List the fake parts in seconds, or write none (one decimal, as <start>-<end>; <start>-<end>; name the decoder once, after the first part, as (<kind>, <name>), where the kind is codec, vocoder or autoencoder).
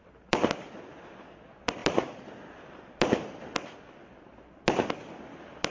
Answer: none